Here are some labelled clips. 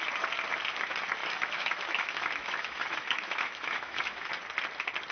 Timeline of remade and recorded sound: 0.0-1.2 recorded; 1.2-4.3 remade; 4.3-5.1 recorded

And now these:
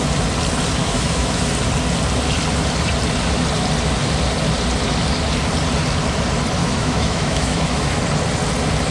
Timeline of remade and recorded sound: 0.0-0.8 recorded; 0.8-1.4 remade; 1.4-6.6 recorded; 6.6-8.0 remade; 8.0-8.9 recorded

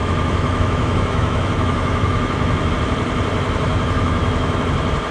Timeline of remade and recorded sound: 0.0-2.7 remade; 2.7-3.7 recorded; 3.7-4.6 remade; 4.6-5.1 recorded

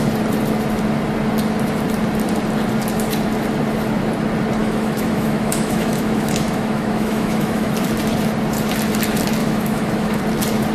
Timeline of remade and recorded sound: 0.0-4.6 recorded; 4.6-7.7 remade; 7.7-9.4 recorded; 9.4-10.2 remade; 10.2-10.7 recorded

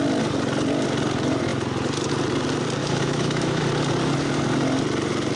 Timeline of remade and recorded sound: 0.0-2.8 recorded; 2.8-3.6 remade; 3.6-5.4 recorded

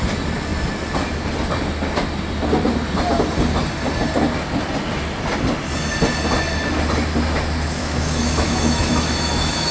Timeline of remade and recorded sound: 0.0-7.8 recorded; 7.8-9.7 remade